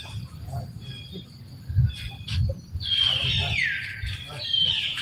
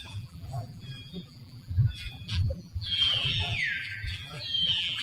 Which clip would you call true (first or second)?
first